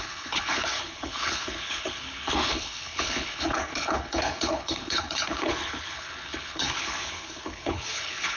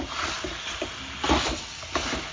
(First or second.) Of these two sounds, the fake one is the first